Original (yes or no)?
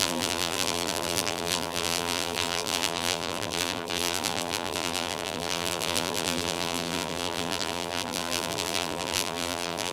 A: no